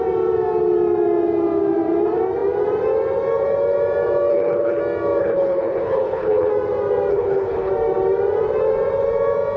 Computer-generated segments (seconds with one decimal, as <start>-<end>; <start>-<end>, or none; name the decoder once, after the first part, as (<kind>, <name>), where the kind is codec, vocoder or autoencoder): 4.3-4.8 (codec, HILCodec); 5.2-6.5; 7.1-7.7